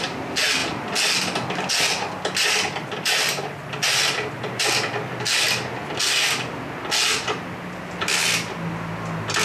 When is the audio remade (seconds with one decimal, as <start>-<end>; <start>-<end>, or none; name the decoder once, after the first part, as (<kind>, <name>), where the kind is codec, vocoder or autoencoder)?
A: none